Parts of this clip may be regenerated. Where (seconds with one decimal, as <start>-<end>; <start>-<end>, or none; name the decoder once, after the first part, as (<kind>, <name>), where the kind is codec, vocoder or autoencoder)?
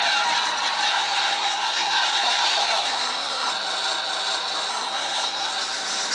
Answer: 0.9-3.5 (codec, SNAC); 4.7-5.5